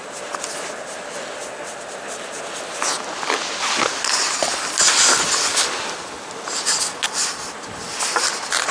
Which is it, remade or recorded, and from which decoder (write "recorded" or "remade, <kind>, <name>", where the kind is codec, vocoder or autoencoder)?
recorded